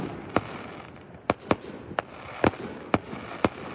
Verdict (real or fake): real